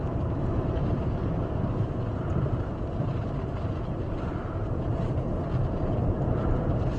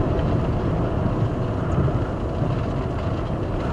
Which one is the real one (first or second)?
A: second